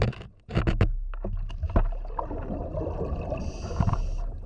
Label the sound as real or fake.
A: real